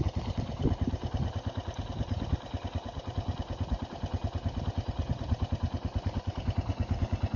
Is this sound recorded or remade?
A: recorded